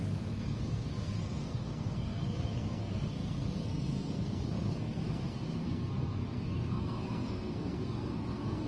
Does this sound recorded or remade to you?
remade